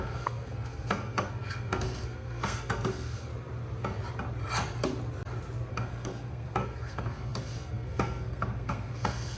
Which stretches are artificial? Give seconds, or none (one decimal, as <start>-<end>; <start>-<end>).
0.0-3.3; 5.7-9.4